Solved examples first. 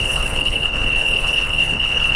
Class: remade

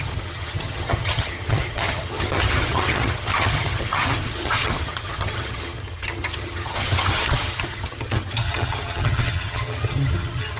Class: remade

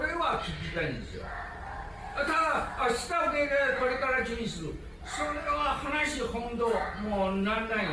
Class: recorded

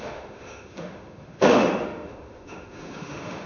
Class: remade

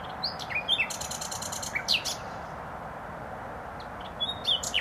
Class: recorded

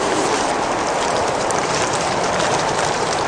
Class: remade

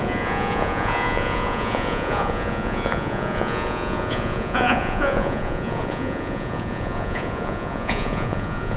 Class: remade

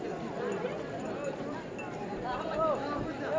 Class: recorded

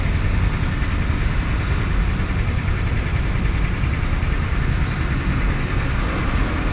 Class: recorded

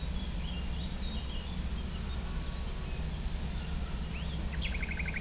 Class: recorded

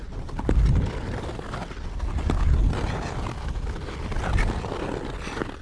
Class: recorded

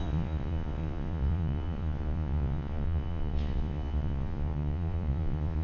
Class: remade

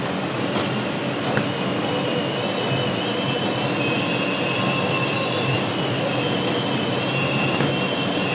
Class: recorded